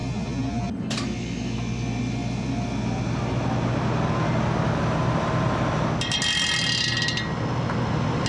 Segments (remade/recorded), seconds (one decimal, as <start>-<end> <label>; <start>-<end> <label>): 0.0-8.3 recorded